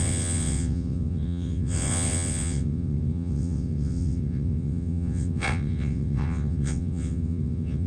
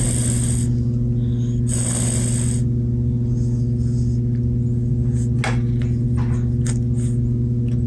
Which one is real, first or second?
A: second